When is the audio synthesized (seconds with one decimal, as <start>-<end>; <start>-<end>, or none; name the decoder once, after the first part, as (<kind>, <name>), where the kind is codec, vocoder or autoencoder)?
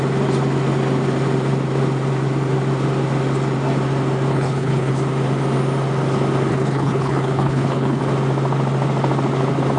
4.3-4.9 (codec, HILCodec); 6.5-8.0